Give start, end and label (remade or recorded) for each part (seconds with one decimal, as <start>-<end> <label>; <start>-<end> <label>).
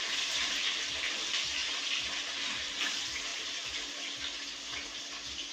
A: 0.0-5.5 recorded